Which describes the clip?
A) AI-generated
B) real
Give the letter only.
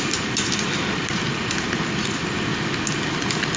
B